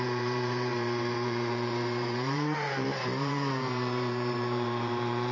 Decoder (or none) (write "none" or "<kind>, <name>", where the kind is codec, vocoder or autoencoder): vocoder, BigVGAN v2